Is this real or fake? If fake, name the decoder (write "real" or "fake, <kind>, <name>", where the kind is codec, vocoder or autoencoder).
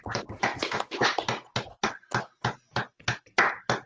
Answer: real